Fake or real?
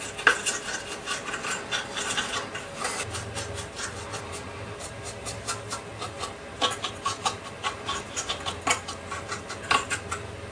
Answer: real